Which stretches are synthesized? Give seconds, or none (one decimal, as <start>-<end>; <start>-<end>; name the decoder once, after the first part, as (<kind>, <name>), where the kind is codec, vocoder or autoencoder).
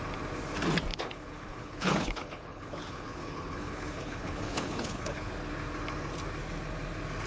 0.9-5.3 (codec, HILCodec)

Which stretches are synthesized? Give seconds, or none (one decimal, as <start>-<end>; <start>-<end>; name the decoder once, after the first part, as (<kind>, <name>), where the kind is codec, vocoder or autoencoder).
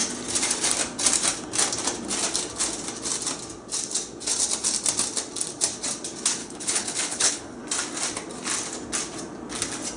6.4-7.6 (codec, HILCodec)